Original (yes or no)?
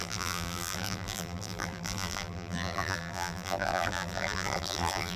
no